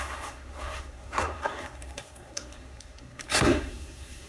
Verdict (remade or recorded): remade